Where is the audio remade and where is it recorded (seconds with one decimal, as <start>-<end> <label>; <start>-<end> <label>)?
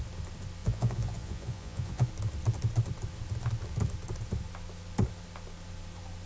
0.0-0.6 recorded; 0.6-2.1 remade; 2.1-6.3 recorded